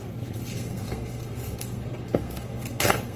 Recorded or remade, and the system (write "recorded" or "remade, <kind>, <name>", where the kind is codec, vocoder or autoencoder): remade, codec, SNAC